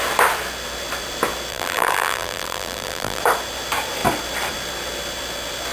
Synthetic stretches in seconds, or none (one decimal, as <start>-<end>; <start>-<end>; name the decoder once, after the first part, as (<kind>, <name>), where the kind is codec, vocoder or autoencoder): 1.5-3.2 (vocoder, BigVGAN v2)